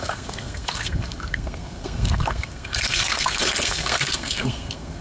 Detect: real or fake fake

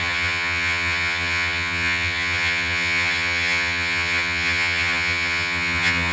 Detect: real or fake fake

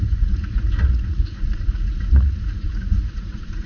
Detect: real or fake fake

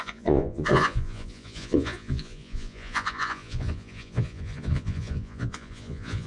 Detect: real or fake fake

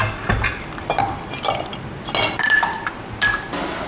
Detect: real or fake real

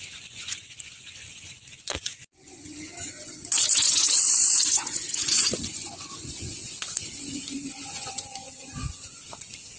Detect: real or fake fake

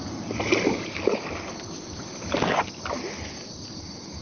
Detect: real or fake real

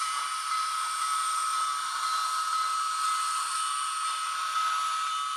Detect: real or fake real